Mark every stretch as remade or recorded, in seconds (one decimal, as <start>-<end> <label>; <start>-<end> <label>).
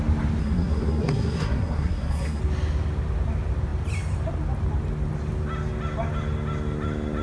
0.0-0.4 recorded; 0.4-2.4 remade; 2.4-7.2 recorded